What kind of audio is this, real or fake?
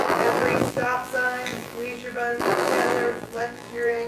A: fake